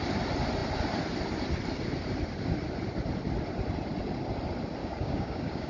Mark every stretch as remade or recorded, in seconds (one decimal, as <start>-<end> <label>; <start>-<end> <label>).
0.0-4.8 recorded; 4.8-5.7 remade